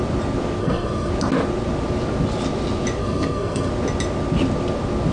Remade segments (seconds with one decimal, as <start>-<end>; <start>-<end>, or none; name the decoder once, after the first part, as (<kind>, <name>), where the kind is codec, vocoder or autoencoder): 0.6-1.1 (codec, SNAC); 3.0-3.7

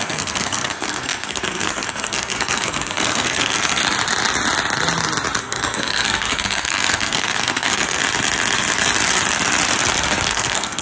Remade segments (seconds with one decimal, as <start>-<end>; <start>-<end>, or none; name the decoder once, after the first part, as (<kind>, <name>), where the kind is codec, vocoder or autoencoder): 0.0-3.8 (codec, SNAC); 5.4-8.0; 10.3-10.8

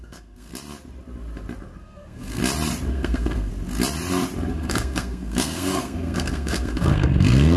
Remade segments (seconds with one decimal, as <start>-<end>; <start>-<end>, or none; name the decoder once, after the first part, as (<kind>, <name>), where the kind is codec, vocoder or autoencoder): 0.0-0.5 (codec, SNAC); 1.8-2.4; 2.9-3.5; 4.5-7.6

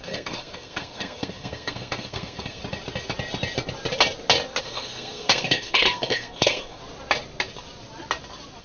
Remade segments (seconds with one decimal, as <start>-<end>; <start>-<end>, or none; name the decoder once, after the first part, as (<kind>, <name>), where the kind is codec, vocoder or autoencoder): 0.0-2.6 (codec, SNAC); 4.6-6.8